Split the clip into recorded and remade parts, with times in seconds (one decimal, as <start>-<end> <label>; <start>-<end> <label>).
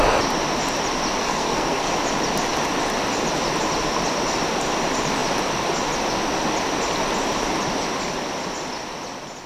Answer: 0.0-1.2 recorded; 1.2-1.9 remade; 1.9-9.5 recorded